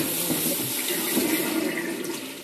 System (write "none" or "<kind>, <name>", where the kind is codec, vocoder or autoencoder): none